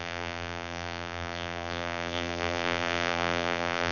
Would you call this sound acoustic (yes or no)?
no